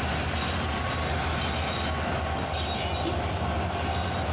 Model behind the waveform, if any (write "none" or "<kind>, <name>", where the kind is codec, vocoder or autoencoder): none